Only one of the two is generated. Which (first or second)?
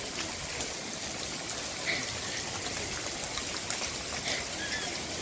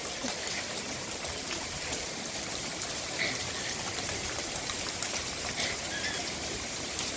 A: second